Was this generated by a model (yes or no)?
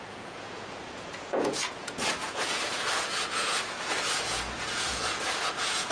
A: yes